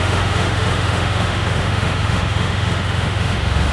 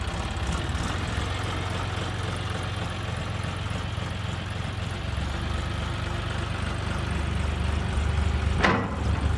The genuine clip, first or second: second